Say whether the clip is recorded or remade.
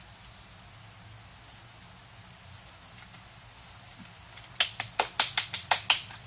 recorded